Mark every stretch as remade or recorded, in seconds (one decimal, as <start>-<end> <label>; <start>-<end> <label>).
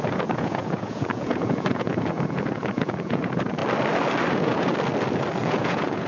0.0-3.6 remade; 3.6-4.3 recorded; 4.3-4.7 remade; 4.7-5.4 recorded; 5.4-6.1 remade